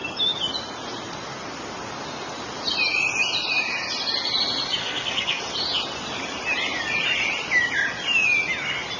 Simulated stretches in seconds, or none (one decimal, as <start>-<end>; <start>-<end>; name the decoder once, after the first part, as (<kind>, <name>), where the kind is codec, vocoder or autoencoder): 4.8-5.4 (codec, SNAC)